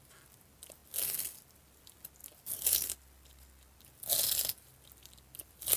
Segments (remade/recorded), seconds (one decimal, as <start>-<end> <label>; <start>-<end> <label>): 0.0-5.8 recorded